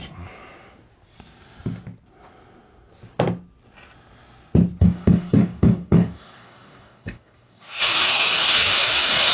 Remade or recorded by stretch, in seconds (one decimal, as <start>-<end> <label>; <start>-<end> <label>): 0.0-4.8 recorded; 4.8-9.3 remade